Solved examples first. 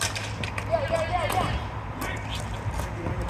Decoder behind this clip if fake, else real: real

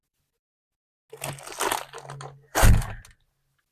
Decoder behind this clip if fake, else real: real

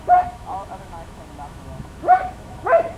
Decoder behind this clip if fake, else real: fake, autoencoder, DAC-VAE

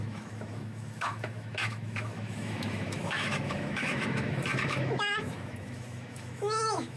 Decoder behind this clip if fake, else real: fake, autoencoder, DAC-VAE